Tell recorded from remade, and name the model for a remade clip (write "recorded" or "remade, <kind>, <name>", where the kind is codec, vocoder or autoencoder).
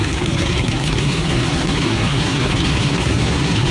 remade, codec, SNAC